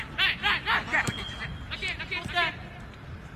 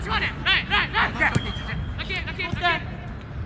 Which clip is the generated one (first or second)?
first